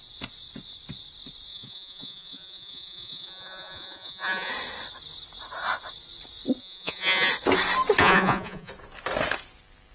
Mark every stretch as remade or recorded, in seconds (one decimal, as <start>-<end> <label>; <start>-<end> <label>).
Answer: 0.0-1.5 recorded; 1.5-4.5 remade; 4.5-6.6 recorded; 6.6-7.3 remade; 7.3-8.0 recorded; 8.0-8.7 remade; 8.7-9.9 recorded